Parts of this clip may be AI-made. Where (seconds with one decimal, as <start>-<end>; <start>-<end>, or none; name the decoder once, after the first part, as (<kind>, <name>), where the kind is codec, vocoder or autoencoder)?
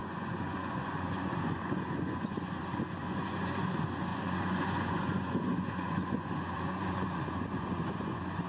0.0-2.6 (vocoder, Vocos); 3.0-3.6; 4.1-8.5